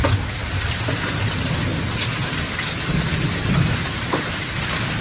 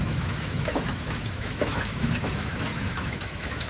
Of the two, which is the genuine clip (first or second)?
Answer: first